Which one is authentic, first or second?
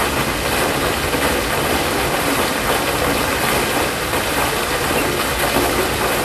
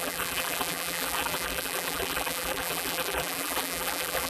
first